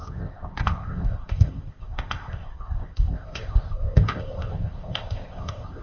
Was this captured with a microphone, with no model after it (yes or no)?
no